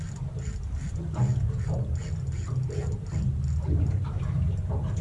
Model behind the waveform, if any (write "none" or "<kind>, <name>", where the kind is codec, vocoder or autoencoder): none